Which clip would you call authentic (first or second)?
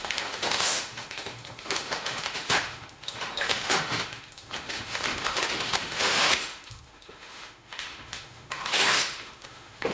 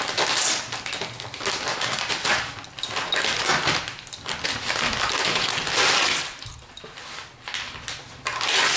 second